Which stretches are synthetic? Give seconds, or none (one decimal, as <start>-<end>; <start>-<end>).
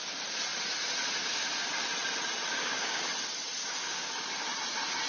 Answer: 2.5-3.0; 3.6-4.1